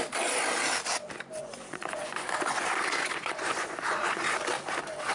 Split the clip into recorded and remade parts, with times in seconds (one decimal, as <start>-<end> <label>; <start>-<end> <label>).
0.0-1.4 recorded; 1.4-4.4 remade; 4.4-5.1 recorded